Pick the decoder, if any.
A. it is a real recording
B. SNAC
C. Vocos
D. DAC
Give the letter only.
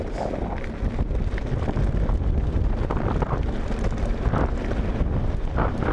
A